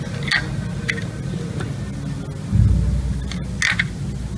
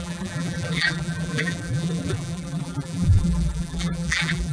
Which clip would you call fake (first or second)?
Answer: second